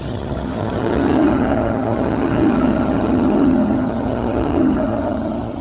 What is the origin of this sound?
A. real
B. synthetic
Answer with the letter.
B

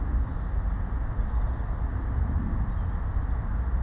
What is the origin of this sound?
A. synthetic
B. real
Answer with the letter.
B